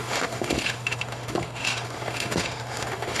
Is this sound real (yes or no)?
no